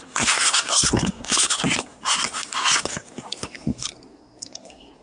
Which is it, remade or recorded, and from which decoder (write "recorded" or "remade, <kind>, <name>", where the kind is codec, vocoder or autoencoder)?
remade, codec, SNAC